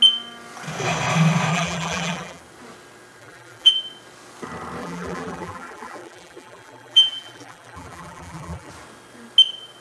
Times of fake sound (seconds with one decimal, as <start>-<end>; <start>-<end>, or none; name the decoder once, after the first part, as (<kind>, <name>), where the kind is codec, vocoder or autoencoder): 1.5-2.4 (vocoder, BigVGAN v2); 3.2-3.7; 4.8-8.7